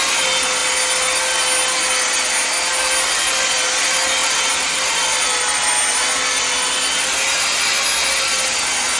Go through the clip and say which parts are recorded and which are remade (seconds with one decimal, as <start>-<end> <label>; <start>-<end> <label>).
0.0-9.0 recorded